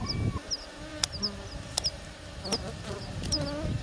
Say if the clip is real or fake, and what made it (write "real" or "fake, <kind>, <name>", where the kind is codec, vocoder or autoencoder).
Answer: real